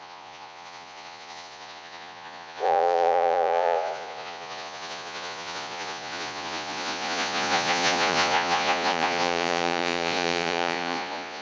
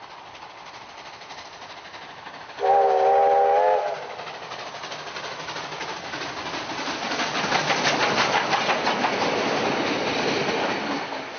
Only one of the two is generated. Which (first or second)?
first